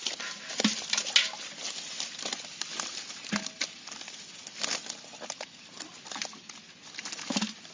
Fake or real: real